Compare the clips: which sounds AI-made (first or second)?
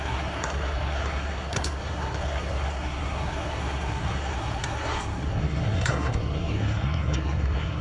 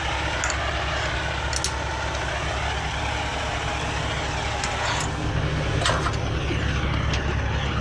first